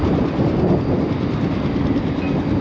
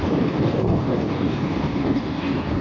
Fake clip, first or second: second